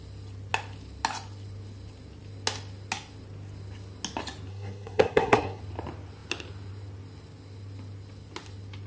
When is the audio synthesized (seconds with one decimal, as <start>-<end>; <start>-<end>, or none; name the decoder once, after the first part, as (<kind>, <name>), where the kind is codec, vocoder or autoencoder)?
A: 4.5-5.6 (codec, SNAC)

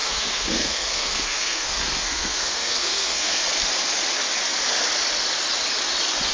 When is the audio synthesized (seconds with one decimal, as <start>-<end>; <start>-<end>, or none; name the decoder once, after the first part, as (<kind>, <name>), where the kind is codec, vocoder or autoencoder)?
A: 0.0-3.4 (codec, SNAC)

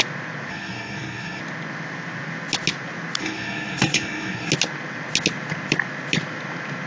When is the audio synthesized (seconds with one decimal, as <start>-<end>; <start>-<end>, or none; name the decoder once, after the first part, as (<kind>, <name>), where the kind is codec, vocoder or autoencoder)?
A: 0.5-1.4 (codec, SNAC); 3.2-4.5

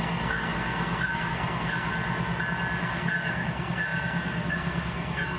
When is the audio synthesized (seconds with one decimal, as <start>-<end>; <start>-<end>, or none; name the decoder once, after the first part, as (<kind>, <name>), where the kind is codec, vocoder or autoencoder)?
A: 0.0-1.9 (codec, SNAC); 2.8-5.4

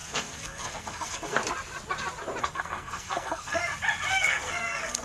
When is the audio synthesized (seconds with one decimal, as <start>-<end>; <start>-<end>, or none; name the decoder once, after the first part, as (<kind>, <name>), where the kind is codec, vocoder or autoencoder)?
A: 0.0-1.4 (codec, SNAC); 2.4-3.6; 4.1-5.0